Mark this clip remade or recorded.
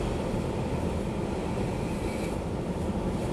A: recorded